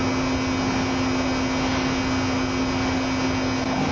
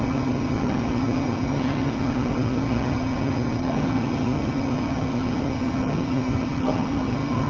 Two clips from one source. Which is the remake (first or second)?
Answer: second